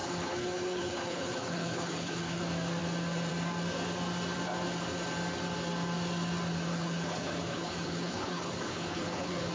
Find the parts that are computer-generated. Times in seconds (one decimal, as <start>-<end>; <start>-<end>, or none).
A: 0.0-2.4; 6.7-9.5